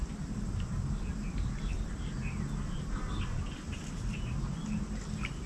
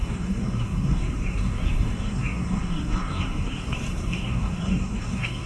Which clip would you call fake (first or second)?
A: second